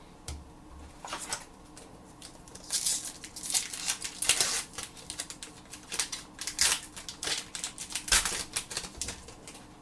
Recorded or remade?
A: recorded